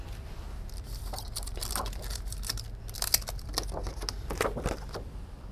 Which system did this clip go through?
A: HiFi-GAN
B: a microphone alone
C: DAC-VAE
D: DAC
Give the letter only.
B